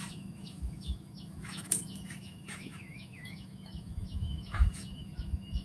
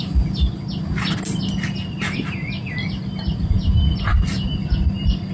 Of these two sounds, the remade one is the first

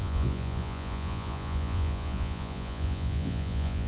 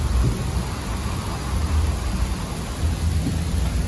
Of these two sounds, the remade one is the first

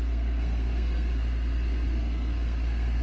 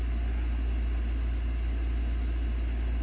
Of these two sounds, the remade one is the first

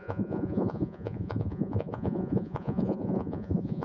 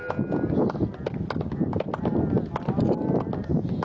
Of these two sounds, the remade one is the first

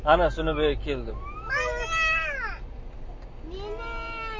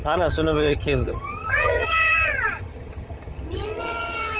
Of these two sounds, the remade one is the second